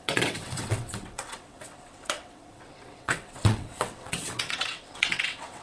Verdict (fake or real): fake